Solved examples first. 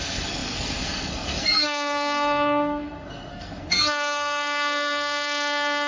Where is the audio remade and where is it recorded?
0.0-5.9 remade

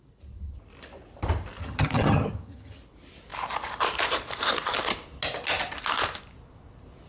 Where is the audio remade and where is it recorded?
0.0-1.6 recorded; 1.6-2.8 remade; 2.8-7.1 recorded